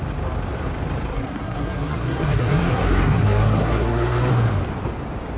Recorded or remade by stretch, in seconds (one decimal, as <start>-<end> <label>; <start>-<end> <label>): 0.0-1.1 recorded; 1.1-4.3 remade; 4.3-5.4 recorded